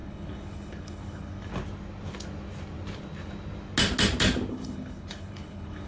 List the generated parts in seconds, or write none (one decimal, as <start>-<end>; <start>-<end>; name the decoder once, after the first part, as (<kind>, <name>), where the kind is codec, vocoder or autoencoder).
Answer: 0.0-1.5 (codec, HILCodec); 4.5-5.9